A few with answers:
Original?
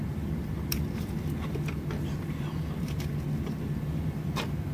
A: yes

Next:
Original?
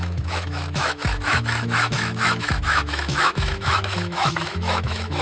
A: no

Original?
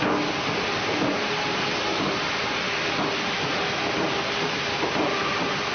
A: yes